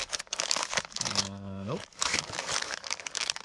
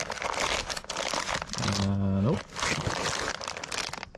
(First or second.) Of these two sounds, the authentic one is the second